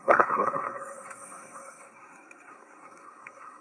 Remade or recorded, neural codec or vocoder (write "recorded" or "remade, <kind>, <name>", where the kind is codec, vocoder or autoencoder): remade, codec, SNAC